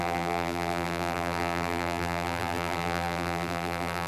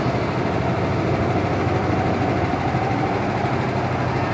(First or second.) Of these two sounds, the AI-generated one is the first